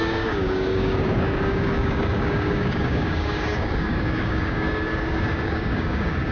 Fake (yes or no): yes